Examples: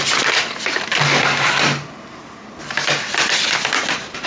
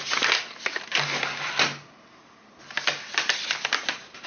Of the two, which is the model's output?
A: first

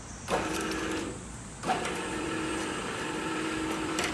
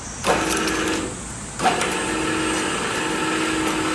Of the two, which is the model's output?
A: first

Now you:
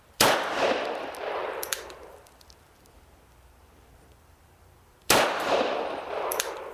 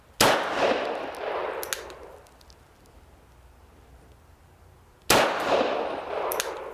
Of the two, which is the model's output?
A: first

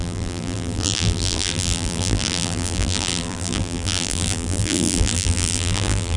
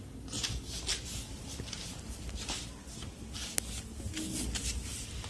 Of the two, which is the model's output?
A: first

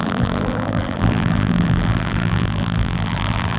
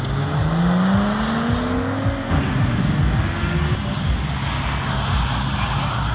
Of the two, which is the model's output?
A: first